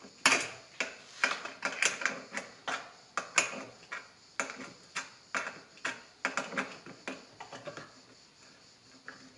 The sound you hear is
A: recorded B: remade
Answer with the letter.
A